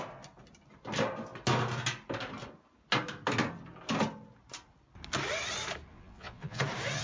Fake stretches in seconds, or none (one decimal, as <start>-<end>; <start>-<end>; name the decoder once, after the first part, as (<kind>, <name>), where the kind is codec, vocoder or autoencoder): 5.9-6.6 (vocoder, Vocos)